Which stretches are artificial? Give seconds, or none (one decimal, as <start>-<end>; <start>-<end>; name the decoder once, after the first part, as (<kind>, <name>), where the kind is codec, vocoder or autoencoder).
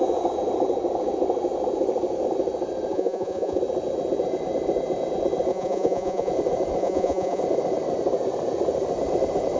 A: 2.9-3.6 (vocoder, Vocos); 5.5-6.3; 6.8-7.4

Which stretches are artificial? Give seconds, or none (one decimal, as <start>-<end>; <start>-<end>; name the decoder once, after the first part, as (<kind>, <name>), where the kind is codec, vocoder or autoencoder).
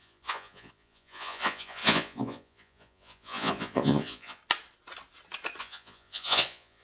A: 0.0-4.4 (vocoder, Vocos); 5.6-6.8